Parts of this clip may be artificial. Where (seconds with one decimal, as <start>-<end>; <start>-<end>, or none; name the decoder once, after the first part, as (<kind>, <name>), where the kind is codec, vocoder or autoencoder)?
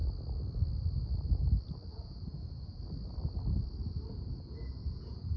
1.9-2.8 (vocoder, Vocos); 4.1-5.4